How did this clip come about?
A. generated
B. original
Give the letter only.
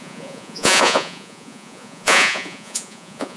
A